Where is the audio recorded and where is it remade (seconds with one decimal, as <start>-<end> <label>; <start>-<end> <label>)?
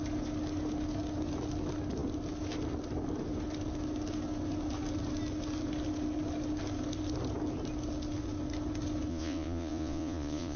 0.0-9.1 recorded; 9.1-10.6 remade